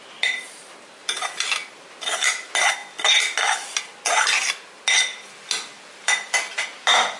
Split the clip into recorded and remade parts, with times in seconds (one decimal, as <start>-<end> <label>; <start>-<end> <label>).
0.0-7.2 recorded